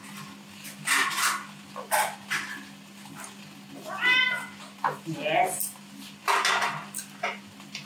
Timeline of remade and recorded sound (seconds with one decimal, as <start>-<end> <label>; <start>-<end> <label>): 0.0-7.9 recorded